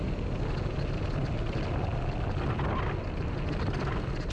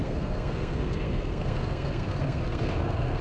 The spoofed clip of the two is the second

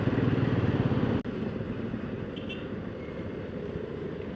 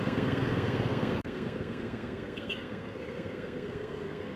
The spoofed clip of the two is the second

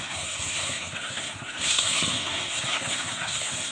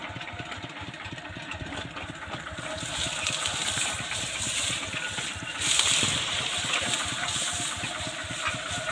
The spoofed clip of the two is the first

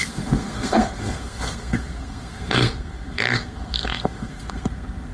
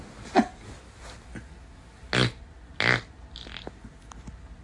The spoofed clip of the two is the first